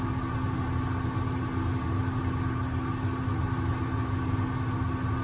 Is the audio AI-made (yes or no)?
no